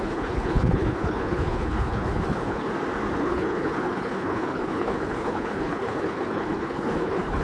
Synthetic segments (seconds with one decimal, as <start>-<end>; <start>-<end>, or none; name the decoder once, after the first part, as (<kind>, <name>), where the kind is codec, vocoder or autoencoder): 0.0-2.7 (codec, HILCodec); 3.2-7.4